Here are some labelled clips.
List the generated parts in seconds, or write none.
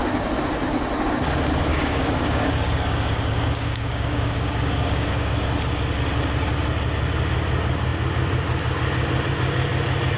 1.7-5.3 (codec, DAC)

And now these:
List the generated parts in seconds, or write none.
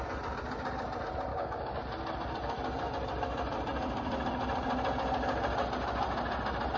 1.3-1.8 (codec, DAC)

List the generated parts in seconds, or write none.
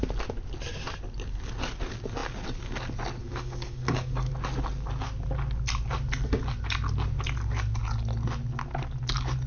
3.2-4.3 (codec, DAC)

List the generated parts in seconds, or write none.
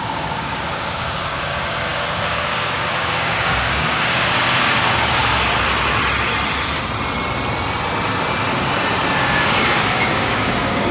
0.0-5.2 (codec, DAC); 9.2-10.9